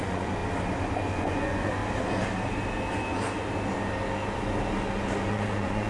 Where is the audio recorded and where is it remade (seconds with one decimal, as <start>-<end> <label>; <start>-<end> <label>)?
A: 0.0-0.4 remade; 0.4-1.1 recorded; 1.1-1.8 remade; 1.8-5.3 recorded; 5.3-5.9 remade